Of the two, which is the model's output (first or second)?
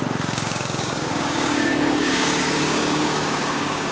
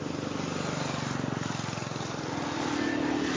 first